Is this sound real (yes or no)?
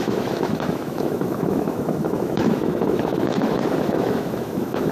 no